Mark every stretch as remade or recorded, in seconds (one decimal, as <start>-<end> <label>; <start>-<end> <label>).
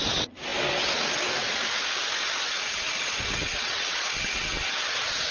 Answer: 0.0-3.4 recorded; 3.4-4.0 remade; 4.0-5.3 recorded